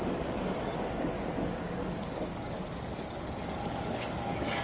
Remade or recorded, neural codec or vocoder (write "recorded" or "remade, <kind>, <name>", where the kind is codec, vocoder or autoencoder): remade, codec, DAC